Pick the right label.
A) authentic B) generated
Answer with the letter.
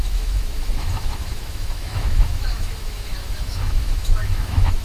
B